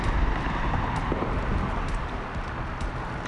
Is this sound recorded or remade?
recorded